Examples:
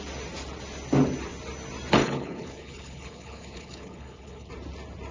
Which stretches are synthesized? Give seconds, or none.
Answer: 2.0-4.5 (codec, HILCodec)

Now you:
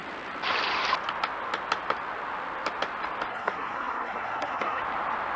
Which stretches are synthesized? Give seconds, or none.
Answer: 3.3-4.8 (codec, SNAC)